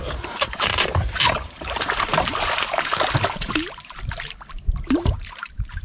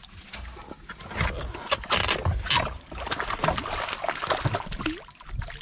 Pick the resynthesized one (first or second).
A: first